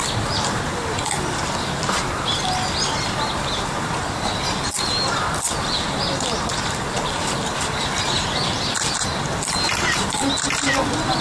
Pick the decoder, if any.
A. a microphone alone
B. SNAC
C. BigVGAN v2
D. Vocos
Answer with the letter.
A